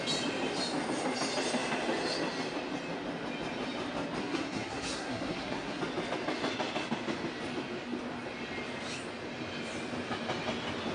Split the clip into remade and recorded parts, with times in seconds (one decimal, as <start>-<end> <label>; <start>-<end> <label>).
0.0-4.2 recorded; 4.2-5.8 remade; 5.8-10.9 recorded